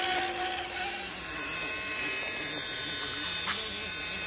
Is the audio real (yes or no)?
yes